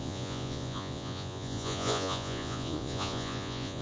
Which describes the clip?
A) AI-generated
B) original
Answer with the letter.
A